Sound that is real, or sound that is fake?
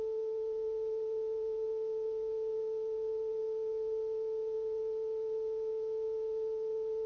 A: real